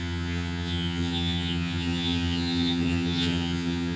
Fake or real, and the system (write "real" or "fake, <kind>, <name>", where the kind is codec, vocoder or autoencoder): fake, vocoder, HiFi-GAN